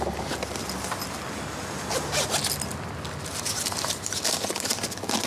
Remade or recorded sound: recorded